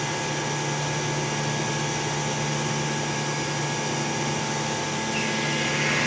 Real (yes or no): yes